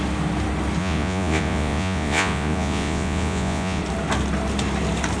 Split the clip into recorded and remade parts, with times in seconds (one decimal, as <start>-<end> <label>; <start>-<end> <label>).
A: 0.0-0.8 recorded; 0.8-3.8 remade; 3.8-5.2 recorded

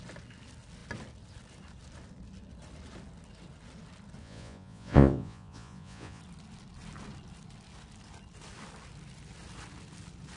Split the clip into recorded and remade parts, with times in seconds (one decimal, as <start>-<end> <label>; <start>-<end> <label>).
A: 0.0-4.2 recorded; 4.2-6.2 remade; 6.2-10.4 recorded

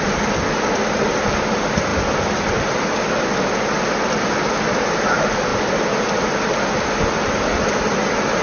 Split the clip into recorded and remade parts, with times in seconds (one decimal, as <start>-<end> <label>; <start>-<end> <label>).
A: 0.0-8.4 recorded